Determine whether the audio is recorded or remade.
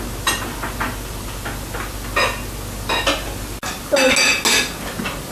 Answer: recorded